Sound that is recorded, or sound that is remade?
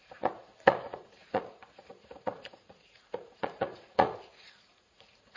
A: remade